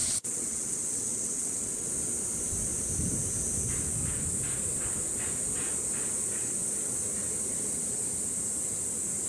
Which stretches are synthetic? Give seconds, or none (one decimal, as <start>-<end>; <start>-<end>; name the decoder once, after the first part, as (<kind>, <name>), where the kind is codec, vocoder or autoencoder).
0.0-1.9 (vocoder, WaveNeXt)